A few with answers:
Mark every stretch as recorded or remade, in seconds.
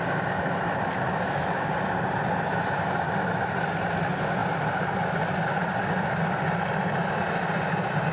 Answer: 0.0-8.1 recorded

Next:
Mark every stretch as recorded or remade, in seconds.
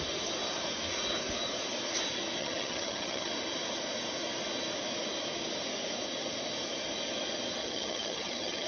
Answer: 0.0-2.4 recorded; 2.4-3.3 remade; 3.3-7.6 recorded; 7.6-8.7 remade